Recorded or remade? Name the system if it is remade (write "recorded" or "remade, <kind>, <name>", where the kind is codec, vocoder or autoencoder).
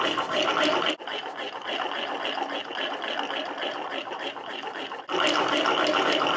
recorded